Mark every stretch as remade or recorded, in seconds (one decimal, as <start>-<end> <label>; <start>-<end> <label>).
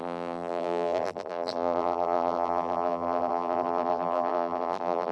0.0-5.1 remade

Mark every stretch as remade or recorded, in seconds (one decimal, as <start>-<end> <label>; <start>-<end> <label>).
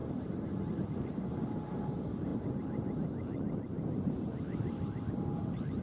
0.0-5.8 recorded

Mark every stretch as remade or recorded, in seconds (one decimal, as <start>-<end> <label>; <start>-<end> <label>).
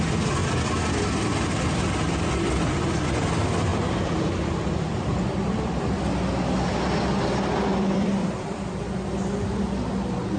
0.0-0.4 recorded; 0.4-0.9 remade; 0.9-3.7 recorded; 3.7-5.1 remade; 5.1-7.7 recorded; 7.7-8.8 remade; 8.8-10.4 recorded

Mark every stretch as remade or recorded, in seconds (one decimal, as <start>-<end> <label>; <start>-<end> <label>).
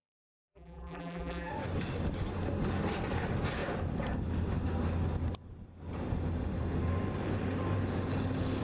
0.0-1.5 remade; 1.5-8.6 recorded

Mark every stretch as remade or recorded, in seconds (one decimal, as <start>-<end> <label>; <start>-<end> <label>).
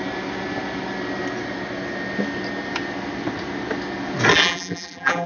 0.0-4.3 recorded; 4.3-5.3 remade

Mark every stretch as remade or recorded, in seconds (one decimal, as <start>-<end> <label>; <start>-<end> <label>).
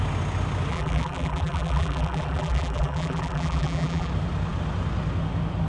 0.0-0.7 recorded; 0.7-4.1 remade; 4.1-5.7 recorded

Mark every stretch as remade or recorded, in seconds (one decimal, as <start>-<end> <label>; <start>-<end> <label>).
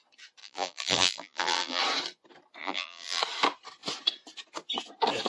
0.0-0.4 recorded; 0.4-1.8 remade; 1.8-2.6 recorded; 2.6-3.2 remade; 3.2-5.3 recorded